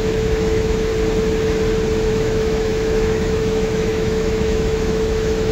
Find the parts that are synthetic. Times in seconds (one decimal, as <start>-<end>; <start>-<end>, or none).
0.0-0.9; 2.1-5.5